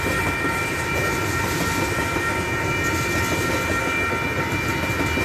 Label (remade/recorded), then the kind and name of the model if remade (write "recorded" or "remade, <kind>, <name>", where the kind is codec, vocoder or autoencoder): recorded